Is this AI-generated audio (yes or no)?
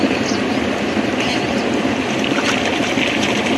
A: no